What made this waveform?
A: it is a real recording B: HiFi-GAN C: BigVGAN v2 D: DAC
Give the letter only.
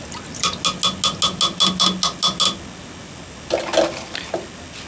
A